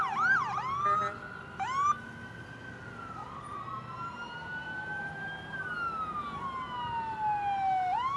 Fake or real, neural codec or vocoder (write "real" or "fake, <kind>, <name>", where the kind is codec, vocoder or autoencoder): real